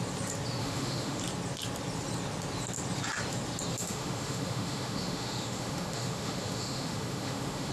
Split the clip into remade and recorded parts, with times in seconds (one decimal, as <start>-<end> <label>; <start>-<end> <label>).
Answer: 0.0-0.6 recorded; 0.6-1.2 remade; 1.2-3.7 recorded; 3.7-7.7 remade